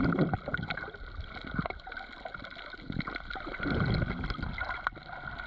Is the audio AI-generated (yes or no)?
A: no